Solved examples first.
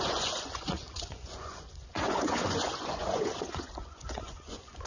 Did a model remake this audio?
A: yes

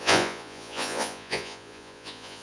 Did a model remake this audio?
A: yes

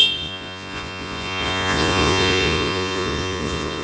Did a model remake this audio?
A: yes